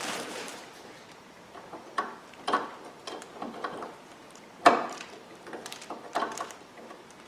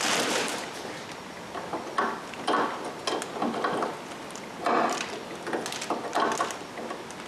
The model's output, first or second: first